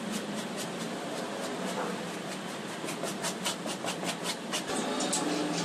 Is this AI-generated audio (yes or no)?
no